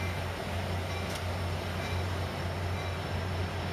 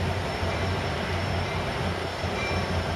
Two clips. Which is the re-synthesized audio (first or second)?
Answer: second